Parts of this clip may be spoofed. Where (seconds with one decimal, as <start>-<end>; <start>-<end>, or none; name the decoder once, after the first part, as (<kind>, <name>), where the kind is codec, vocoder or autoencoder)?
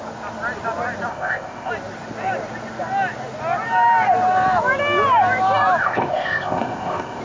1.1-1.7 (codec, ZipCodec); 5.8-7.2